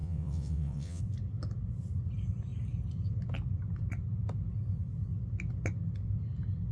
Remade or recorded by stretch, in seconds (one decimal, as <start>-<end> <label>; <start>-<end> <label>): 0.0-1.0 remade; 1.0-6.7 recorded

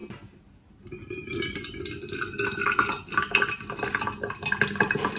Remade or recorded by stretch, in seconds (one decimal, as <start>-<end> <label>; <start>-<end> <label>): 0.0-5.2 recorded

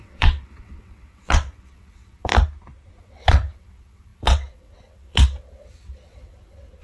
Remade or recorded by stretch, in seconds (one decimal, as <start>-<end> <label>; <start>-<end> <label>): 0.0-2.3 remade; 2.3-3.0 recorded; 3.0-6.8 remade

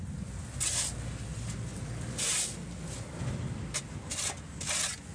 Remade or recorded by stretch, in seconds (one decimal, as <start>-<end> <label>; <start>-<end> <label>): 0.0-5.1 recorded

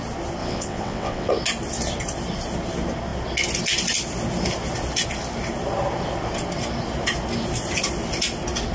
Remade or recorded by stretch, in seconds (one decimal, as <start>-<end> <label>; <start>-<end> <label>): 0.0-0.4 recorded; 0.4-1.3 remade; 1.3-8.7 recorded